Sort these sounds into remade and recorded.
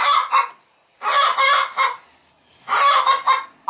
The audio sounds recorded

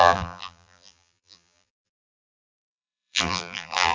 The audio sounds remade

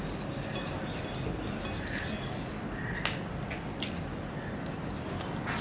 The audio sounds recorded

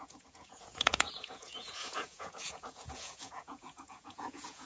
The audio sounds remade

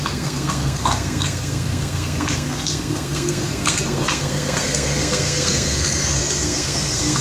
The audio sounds remade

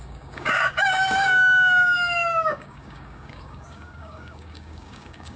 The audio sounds remade